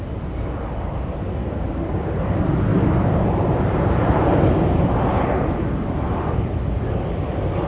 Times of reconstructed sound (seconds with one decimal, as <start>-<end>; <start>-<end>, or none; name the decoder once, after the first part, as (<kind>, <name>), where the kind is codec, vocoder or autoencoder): 1.4-2.2 (vocoder, BigVGAN v2); 2.7-6.6